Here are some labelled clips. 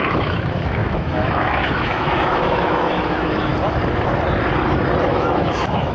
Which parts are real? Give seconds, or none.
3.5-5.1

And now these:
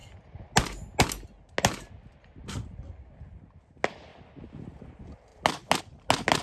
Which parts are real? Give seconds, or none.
0.0-6.4

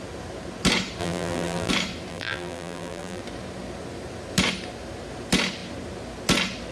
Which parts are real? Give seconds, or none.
0.0-1.0; 1.7-2.1; 3.2-6.7

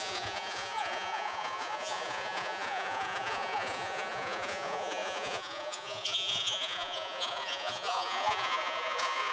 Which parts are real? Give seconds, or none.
none